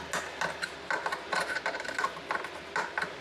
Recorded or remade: recorded